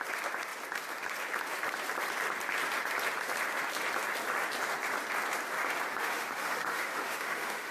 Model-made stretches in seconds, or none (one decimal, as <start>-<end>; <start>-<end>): 6.0-7.7